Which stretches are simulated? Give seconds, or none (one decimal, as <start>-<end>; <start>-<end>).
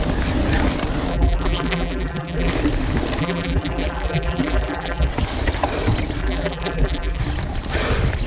1.1-2.5; 3.2-5.1; 6.2-7.2